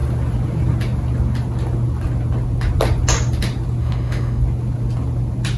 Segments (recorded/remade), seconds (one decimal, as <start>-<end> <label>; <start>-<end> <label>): 0.0-3.8 recorded; 3.8-4.4 remade; 4.4-5.6 recorded